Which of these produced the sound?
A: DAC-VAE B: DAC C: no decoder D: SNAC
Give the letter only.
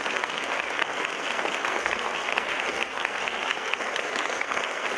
D